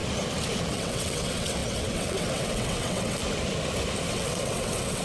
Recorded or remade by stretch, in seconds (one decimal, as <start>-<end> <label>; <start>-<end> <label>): 0.0-0.7 recorded; 0.7-3.2 remade; 3.2-4.1 recorded; 4.1-5.0 remade